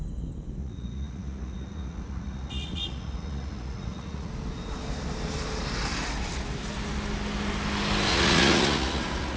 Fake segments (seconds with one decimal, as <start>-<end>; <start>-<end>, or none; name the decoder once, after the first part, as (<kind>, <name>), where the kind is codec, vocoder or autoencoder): 0.6-4.3 (vocoder, Vocos); 8.1-9.4